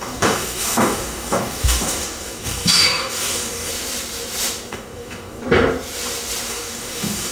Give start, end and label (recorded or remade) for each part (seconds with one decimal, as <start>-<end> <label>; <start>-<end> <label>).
0.0-3.7 remade; 3.7-4.7 recorded; 4.7-5.4 remade; 5.4-6.5 recorded; 6.5-7.3 remade